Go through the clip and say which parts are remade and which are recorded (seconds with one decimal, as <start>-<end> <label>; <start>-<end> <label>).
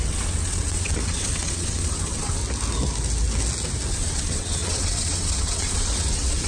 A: 0.0-2.4 remade; 2.4-3.9 recorded; 3.9-6.5 remade